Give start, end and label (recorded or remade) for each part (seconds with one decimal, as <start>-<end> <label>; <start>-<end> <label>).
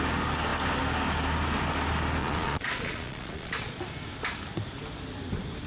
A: 0.0-2.2 recorded; 2.2-3.8 remade; 3.8-5.7 recorded